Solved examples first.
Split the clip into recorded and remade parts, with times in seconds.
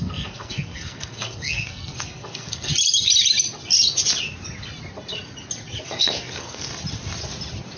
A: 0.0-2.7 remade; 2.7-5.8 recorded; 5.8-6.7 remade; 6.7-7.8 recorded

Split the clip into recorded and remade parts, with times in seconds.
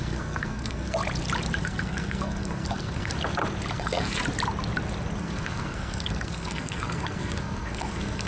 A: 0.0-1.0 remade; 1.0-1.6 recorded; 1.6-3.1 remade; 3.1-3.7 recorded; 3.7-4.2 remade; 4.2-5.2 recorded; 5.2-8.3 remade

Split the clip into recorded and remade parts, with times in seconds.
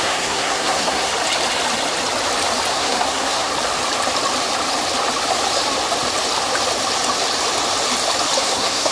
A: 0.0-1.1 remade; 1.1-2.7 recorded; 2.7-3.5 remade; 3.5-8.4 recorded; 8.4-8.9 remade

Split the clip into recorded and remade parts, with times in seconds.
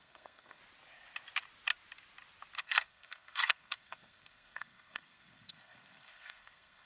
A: 0.0-0.6 remade; 0.6-2.6 recorded; 2.6-6.9 remade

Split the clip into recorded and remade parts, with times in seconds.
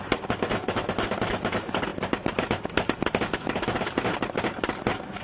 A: 0.0-5.2 recorded